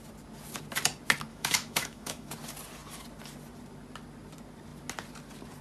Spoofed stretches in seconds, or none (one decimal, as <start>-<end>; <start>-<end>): 1.3-2.3